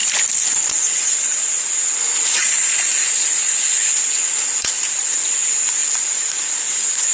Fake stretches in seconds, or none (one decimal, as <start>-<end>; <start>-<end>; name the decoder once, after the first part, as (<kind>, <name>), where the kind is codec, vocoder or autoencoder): 0.7-7.1 (vocoder, Vocos)